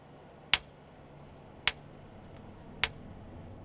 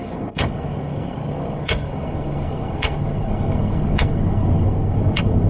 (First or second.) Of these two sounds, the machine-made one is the second